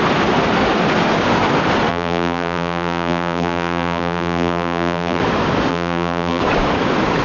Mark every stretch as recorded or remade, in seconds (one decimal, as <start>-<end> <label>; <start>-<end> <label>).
0.0-1.9 recorded; 1.9-5.2 remade; 5.2-5.7 recorded; 5.7-6.4 remade; 6.4-7.2 recorded